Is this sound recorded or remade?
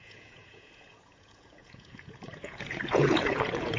remade